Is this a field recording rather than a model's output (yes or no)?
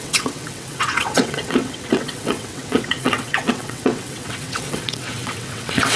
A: no